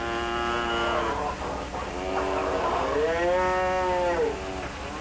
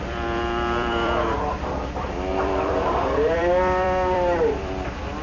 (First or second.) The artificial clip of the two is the second